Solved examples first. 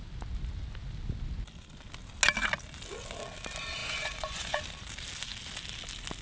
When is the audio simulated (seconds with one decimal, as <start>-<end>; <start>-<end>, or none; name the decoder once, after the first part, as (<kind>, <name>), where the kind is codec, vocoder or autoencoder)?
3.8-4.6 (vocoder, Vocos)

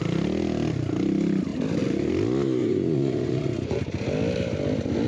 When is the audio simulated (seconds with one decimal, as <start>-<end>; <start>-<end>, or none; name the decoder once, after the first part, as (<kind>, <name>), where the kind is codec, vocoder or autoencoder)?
2.6-3.8 (vocoder, Vocos)

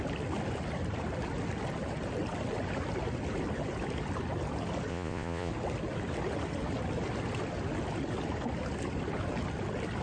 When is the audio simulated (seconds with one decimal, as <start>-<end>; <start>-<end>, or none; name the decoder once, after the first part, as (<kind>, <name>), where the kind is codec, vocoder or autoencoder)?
4.9-5.5 (vocoder, Vocos)

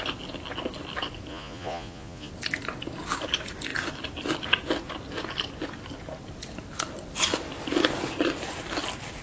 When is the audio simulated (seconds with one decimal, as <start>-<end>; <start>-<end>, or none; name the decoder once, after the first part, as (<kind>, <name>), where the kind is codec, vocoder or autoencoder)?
1.3-2.3 (vocoder, Vocos)

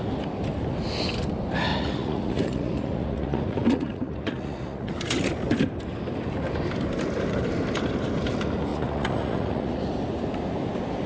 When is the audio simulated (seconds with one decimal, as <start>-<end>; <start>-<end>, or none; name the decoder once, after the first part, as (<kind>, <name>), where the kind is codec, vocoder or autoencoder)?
1.7-4.9 (vocoder, Vocos); 8.7-9.8

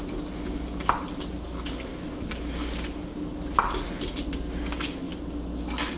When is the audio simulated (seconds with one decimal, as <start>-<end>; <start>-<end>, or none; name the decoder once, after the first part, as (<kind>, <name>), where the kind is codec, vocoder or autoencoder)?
none